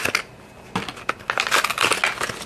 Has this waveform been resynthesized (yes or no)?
no